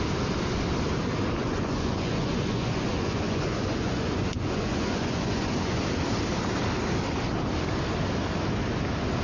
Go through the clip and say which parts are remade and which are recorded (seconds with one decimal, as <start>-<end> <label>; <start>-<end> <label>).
0.0-1.4 recorded; 1.4-5.8 remade; 5.8-9.2 recorded